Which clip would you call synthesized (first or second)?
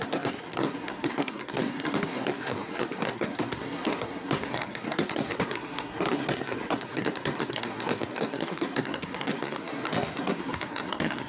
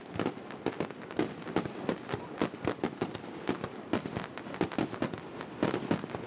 first